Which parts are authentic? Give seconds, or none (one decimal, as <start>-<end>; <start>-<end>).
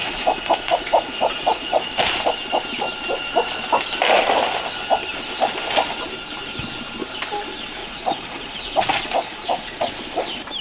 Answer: 1.9-7.8; 9.9-10.6